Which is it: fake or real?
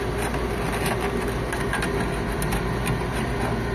real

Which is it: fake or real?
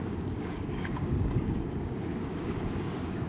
fake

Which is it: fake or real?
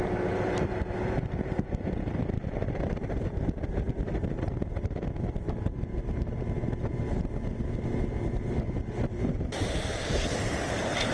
fake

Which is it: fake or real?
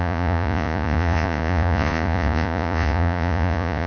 fake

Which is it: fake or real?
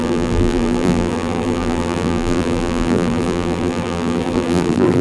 fake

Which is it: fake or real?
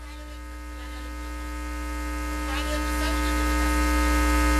real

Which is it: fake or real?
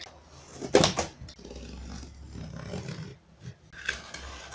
real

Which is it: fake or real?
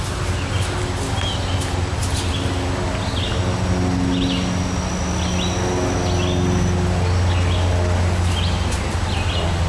real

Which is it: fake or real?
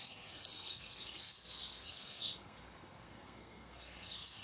fake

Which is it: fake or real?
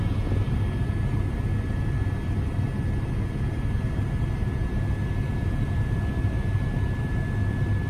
real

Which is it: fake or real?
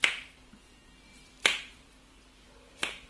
fake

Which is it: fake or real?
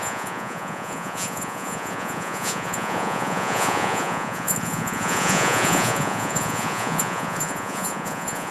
fake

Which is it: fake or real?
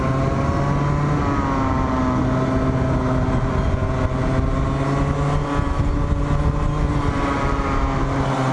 real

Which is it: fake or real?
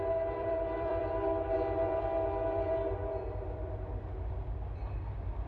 fake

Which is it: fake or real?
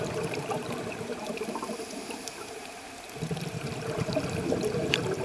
fake